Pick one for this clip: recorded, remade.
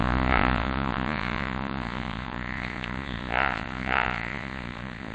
remade